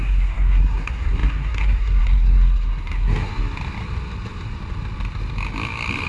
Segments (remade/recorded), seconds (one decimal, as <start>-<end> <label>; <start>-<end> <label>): 0.0-3.3 remade; 3.3-6.1 recorded